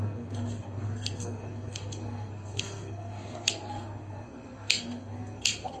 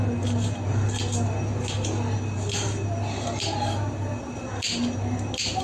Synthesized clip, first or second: first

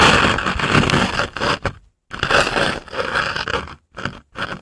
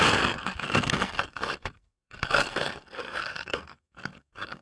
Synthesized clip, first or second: second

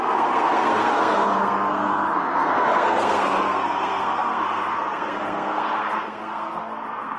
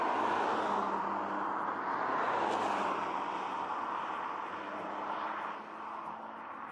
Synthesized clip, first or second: first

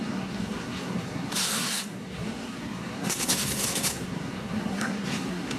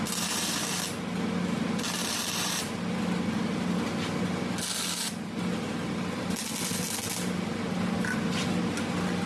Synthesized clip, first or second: first